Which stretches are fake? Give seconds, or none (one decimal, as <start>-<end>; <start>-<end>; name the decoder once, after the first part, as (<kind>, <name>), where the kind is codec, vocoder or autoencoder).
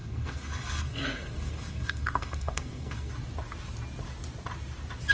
0.0-3.1 (codec, SNAC)